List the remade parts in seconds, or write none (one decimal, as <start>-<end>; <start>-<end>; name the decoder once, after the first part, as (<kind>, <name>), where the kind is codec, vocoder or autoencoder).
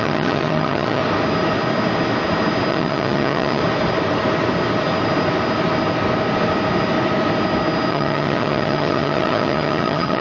0.0-1.0 (vocoder, HiFi-GAN); 2.7-3.6; 7.9-10.2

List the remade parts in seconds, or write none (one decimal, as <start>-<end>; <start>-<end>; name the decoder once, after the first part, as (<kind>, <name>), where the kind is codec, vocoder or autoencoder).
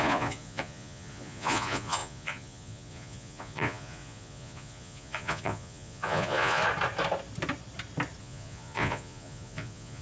0.0-6.6 (vocoder, Vocos); 8.2-10.0